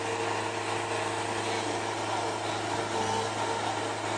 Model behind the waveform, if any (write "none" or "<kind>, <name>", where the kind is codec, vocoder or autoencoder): none